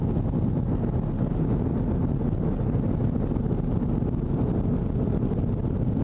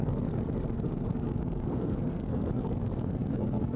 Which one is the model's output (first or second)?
second